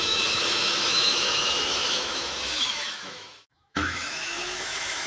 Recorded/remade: remade